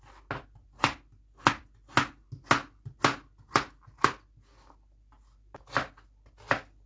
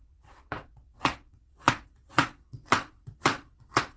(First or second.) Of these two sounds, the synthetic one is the second